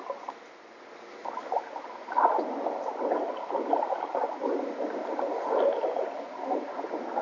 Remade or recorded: recorded